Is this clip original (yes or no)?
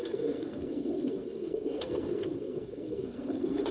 no